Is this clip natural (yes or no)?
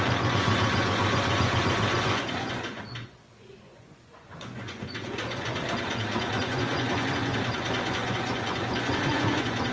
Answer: no